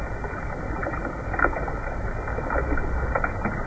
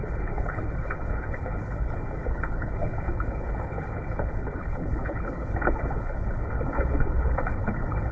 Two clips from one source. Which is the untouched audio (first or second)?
first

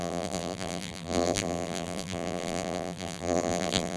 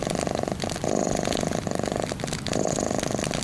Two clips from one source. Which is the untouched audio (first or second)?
second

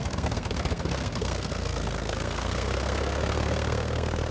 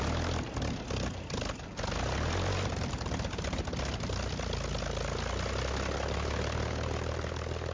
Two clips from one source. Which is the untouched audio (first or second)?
second